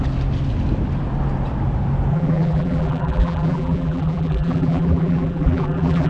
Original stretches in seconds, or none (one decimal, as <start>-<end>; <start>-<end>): 0.0-2.1